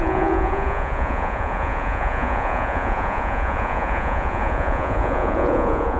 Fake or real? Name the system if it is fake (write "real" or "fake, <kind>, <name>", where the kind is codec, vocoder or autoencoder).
fake, vocoder, Vocos